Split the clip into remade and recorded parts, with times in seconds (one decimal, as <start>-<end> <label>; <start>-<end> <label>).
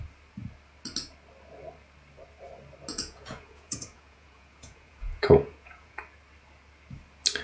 0.0-2.9 recorded; 2.9-6.0 remade; 6.0-7.4 recorded